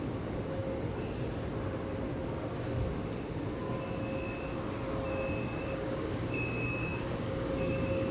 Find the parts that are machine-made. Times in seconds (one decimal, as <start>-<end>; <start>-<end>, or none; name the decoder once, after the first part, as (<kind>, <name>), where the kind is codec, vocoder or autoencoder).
0.0-0.6 (codec, DAC); 5.4-8.1